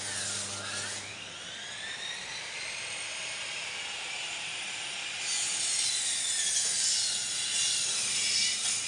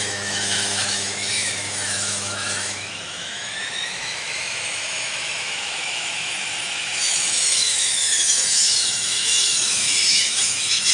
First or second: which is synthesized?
second